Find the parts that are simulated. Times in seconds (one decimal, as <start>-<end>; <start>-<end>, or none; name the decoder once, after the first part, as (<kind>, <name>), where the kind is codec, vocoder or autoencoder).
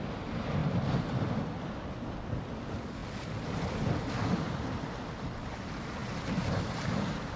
none